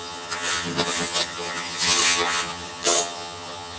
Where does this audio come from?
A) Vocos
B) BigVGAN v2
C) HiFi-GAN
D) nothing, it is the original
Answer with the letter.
C